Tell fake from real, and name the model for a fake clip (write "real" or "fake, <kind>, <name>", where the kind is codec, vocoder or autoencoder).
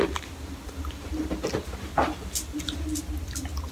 real